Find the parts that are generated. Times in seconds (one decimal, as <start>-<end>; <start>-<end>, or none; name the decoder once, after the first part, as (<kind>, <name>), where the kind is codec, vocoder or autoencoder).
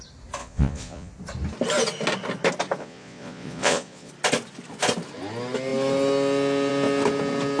0.4-1.1 (vocoder, Vocos); 2.8-4.1